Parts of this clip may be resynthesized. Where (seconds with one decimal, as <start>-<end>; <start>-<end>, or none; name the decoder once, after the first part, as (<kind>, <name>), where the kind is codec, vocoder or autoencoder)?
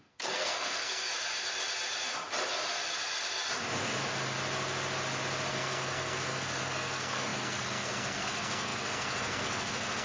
0.0-1.1 (codec, SNAC); 5.5-10.0